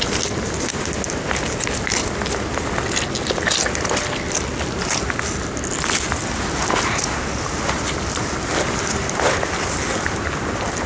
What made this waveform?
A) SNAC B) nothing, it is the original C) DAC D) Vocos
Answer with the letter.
B